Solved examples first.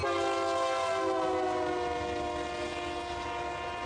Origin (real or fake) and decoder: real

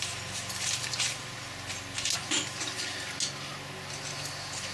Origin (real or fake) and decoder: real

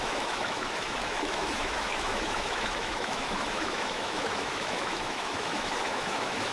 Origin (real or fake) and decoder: fake, autoencoder, DAC-VAE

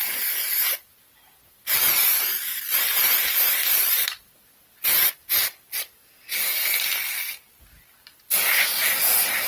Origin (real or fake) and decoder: real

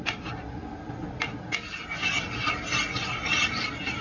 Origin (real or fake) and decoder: real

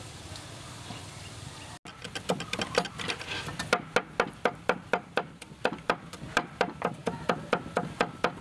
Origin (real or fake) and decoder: real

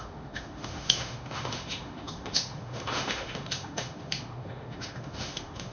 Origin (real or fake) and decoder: fake, autoencoder, DAC-VAE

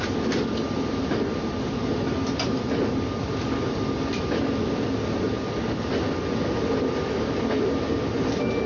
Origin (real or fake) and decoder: real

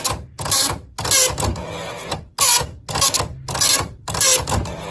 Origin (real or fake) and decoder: real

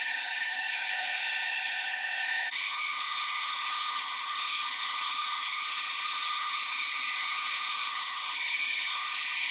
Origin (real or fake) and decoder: fake, codec, HILCodec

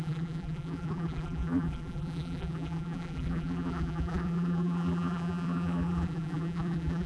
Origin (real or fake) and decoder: fake, vocoder, BigVGAN v2